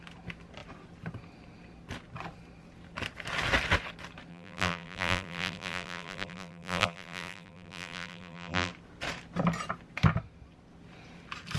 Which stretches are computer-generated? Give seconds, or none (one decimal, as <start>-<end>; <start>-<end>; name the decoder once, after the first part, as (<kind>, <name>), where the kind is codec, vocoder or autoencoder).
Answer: 4.3-8.7 (vocoder, BigVGAN v2)